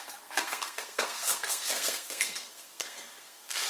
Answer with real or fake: fake